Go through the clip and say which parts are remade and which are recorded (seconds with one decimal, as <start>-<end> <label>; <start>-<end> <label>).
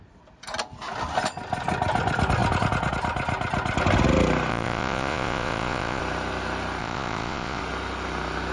0.0-4.5 recorded; 4.5-6.0 remade; 6.0-6.8 recorded; 6.8-7.6 remade; 7.6-8.5 recorded